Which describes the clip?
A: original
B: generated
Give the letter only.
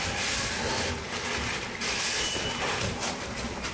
A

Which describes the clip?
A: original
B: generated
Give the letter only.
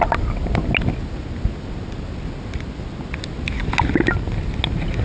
A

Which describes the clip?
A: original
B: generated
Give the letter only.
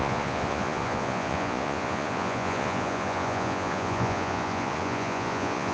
B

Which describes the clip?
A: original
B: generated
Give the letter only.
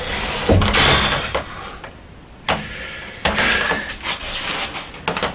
A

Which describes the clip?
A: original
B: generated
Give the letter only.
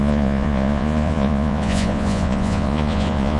B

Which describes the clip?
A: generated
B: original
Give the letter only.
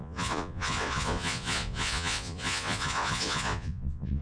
A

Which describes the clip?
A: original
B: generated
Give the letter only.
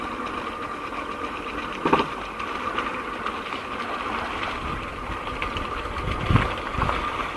A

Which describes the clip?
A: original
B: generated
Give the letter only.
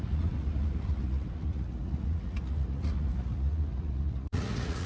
B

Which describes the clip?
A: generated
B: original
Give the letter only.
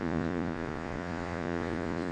A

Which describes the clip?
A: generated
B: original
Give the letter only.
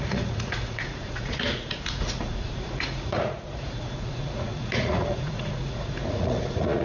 A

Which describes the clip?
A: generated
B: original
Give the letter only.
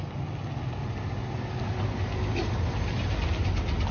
B